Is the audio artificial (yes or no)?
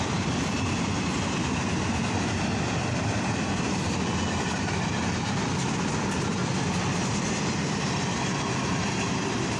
no